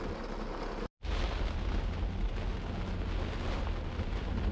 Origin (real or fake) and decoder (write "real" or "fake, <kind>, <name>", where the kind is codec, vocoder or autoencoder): real